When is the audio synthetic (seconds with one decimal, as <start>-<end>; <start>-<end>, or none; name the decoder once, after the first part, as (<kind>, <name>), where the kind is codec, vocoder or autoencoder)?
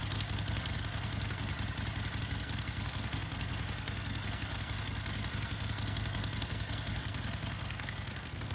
0.0-1.5 (codec, SNAC); 2.2-8.5